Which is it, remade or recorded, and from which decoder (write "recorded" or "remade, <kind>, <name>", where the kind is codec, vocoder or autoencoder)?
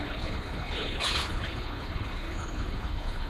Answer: remade, codec, HILCodec